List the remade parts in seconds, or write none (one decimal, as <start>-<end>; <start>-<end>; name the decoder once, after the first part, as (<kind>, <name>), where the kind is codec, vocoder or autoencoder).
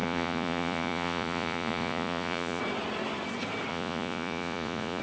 0.0-2.6 (vocoder, Vocos); 3.7-5.0